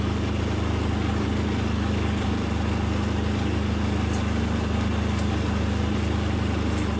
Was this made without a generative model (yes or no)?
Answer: yes